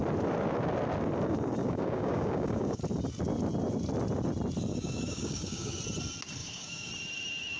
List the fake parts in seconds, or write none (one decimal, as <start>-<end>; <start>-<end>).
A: 1.6-2.8; 4.7-5.8; 6.4-6.9